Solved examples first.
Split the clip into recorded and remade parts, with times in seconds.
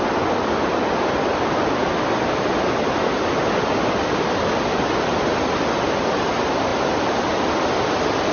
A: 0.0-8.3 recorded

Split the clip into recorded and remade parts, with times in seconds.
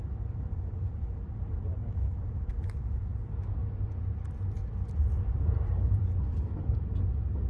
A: 0.0-1.7 recorded; 1.7-2.5 remade; 2.5-7.5 recorded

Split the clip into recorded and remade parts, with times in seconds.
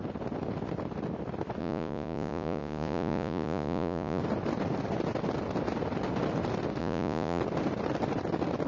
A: 0.0-1.6 recorded; 1.6-4.2 remade; 4.2-6.8 recorded; 6.8-7.4 remade; 7.4-8.7 recorded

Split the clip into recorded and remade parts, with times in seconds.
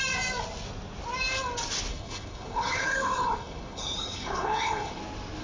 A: 0.0-1.9 recorded; 1.9-5.0 remade; 5.0-5.4 recorded